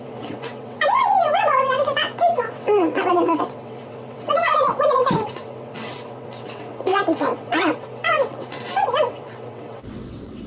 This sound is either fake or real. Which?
fake